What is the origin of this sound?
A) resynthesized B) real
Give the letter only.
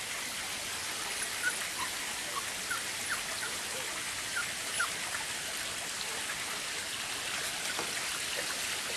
B